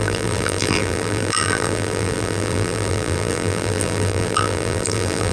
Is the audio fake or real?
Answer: fake